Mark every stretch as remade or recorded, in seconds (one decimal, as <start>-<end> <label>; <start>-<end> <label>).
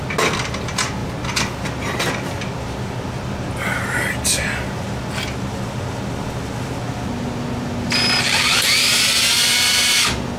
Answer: 0.0-10.4 recorded